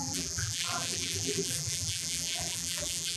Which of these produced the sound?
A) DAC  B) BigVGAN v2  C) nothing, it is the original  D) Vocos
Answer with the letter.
B